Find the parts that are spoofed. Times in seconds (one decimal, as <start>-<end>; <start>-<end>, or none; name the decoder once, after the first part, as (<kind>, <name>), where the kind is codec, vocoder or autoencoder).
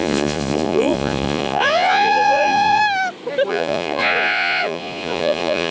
0.0-2.8 (vocoder, Vocos); 3.5-5.7